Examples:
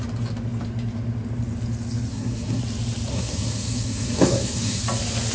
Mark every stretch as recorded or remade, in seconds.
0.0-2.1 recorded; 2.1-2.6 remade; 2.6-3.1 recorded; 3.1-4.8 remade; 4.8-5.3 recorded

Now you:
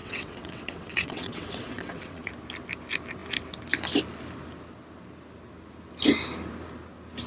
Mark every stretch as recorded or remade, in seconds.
0.0-2.3 remade; 2.3-7.3 recorded